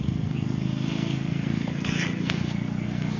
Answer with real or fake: fake